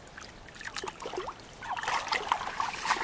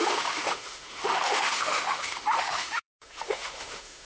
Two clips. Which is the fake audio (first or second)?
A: second